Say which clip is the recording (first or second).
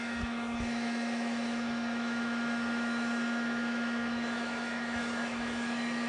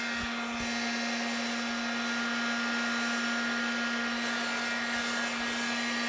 second